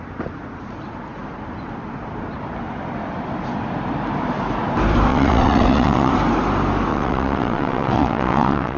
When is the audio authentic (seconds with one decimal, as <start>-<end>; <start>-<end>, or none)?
0.0-5.1; 6.1-6.9